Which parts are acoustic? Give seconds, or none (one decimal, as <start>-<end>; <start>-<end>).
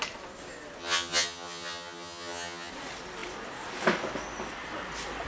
0.0-0.8; 2.7-5.3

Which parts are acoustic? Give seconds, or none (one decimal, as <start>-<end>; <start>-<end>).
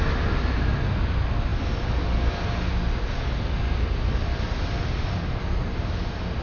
0.0-6.4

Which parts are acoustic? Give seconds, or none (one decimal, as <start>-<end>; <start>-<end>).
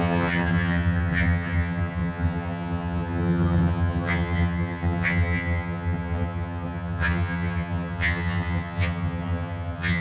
none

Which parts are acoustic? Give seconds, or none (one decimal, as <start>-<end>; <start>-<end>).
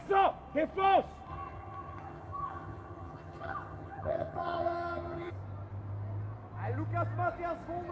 0.0-1.3; 5.3-7.9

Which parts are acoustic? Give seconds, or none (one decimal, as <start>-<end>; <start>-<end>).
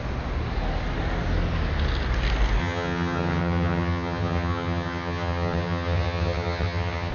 0.0-2.6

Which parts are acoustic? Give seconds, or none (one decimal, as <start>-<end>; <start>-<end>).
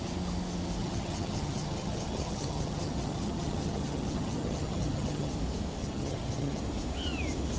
0.0-0.8; 5.3-5.8; 6.6-7.6